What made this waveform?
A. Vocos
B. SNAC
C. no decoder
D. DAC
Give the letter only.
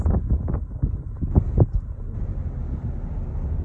C